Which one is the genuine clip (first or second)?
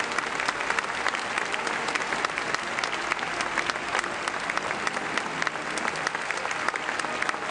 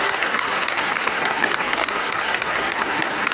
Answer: first